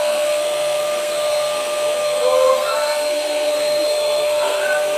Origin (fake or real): fake